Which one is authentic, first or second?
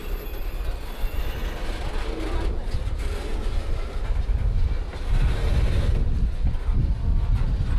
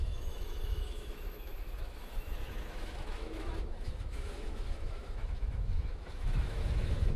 first